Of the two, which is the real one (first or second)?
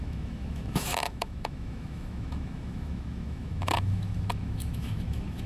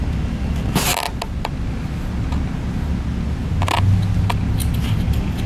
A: second